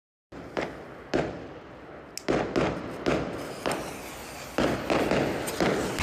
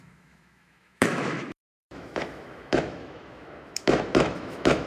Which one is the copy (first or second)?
second